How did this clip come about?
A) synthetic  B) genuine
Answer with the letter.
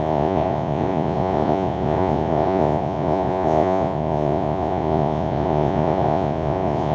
A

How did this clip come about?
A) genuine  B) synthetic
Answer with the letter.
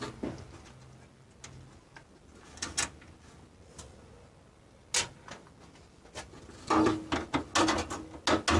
A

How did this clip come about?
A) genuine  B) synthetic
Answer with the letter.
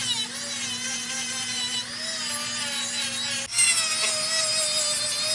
A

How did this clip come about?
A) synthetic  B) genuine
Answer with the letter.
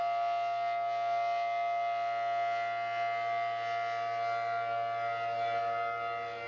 B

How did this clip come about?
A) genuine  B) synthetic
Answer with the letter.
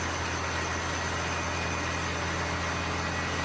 A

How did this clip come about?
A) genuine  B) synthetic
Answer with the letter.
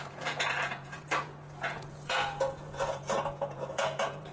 B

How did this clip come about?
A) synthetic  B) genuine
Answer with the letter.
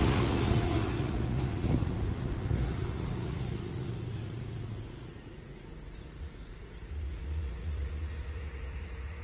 A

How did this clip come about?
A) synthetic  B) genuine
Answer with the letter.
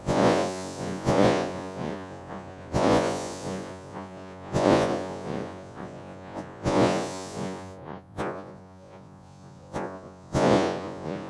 A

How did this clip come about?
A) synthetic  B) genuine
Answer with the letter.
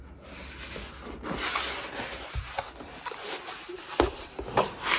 B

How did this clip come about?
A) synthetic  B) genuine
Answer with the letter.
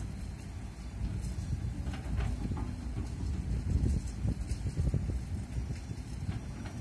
B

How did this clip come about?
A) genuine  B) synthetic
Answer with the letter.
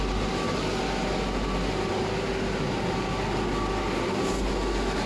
A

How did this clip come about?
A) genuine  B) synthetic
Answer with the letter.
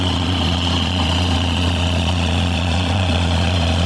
B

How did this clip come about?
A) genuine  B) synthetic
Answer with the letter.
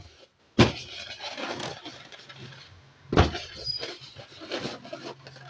A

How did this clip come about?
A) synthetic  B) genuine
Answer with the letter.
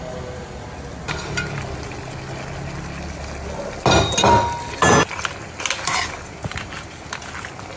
B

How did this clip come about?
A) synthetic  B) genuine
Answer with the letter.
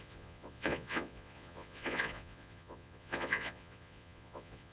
A